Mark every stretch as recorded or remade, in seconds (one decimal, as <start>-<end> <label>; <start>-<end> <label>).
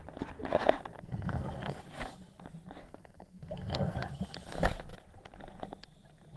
0.0-0.9 recorded; 0.9-1.8 remade; 1.8-2.8 recorded; 2.8-4.1 remade; 4.1-6.4 recorded